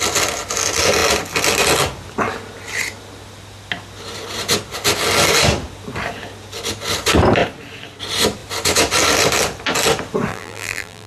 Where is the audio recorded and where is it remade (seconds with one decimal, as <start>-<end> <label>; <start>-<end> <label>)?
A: 0.0-10.3 recorded; 10.3-11.1 remade